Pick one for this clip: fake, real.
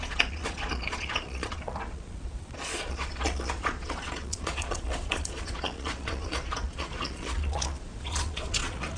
fake